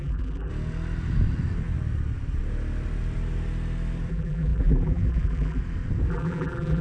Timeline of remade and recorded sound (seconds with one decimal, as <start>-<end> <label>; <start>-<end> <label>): 0.0-0.5 remade; 0.5-4.1 recorded; 4.1-5.6 remade; 5.6-6.1 recorded; 6.1-6.8 remade

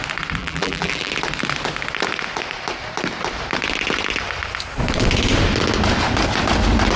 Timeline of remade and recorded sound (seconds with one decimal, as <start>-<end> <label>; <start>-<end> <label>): 0.0-0.4 recorded; 0.4-1.1 remade; 1.1-7.0 recorded

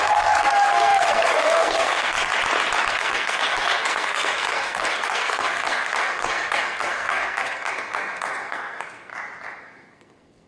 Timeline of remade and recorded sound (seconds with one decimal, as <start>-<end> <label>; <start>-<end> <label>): 0.0-2.3 remade; 2.3-2.9 recorded; 2.9-9.1 remade; 9.1-9.6 recorded; 9.6-10.5 remade

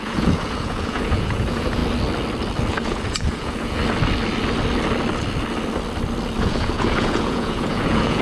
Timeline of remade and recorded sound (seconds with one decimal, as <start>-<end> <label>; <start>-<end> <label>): 0.0-1.8 remade; 1.8-2.7 recorded; 2.7-3.8 remade; 3.8-6.4 recorded; 6.4-8.2 remade

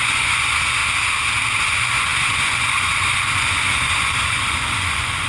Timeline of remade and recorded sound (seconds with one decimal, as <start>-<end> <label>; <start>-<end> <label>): 0.0-0.8 remade; 0.8-1.6 recorded; 1.6-5.3 remade